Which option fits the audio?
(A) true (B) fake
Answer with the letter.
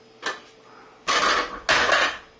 A